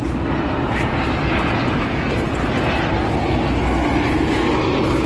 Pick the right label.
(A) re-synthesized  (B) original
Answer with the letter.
B